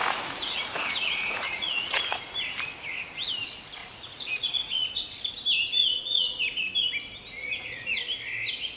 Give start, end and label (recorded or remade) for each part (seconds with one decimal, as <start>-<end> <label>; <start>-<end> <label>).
0.0-2.2 remade; 2.2-3.8 recorded; 3.8-4.8 remade; 4.8-5.8 recorded; 5.8-6.4 remade; 6.4-7.4 recorded; 7.4-8.0 remade; 8.0-8.8 recorded